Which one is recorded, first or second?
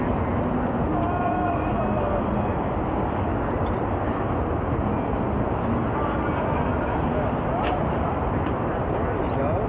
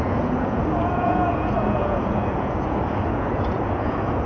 first